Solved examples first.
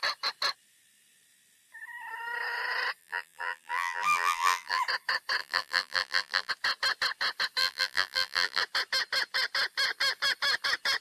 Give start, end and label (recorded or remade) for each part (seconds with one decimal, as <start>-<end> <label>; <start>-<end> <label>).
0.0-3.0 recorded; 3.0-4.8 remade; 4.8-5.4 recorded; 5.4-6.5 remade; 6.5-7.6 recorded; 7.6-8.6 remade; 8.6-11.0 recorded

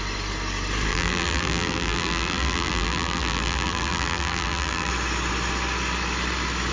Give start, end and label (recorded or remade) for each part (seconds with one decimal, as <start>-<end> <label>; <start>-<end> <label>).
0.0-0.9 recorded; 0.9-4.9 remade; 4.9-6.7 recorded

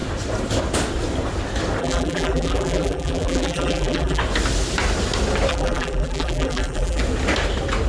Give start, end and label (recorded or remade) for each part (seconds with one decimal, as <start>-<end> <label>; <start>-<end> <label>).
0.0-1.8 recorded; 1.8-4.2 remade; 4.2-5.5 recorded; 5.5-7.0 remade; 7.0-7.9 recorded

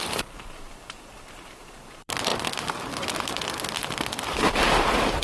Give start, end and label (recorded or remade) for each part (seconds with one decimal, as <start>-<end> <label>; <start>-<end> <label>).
0.0-2.3 remade; 2.3-4.7 recorded; 4.7-5.2 remade